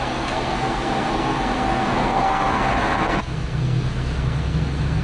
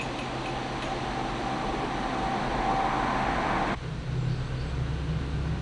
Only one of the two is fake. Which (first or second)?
first